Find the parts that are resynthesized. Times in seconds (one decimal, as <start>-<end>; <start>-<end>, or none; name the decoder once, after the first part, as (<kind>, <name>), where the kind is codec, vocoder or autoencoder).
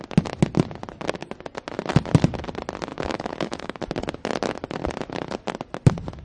2.9-3.8 (autoencoder, DAC-VAE)